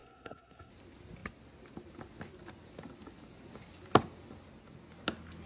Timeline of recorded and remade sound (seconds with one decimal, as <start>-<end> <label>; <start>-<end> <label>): 0.0-0.7 remade; 0.7-5.5 recorded